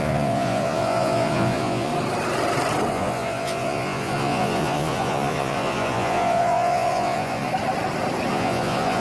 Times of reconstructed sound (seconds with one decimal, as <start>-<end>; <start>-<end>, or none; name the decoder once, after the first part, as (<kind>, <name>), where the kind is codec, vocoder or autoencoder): 0.0-1.9 (vocoder, Vocos); 2.9-7.5; 8.3-9.0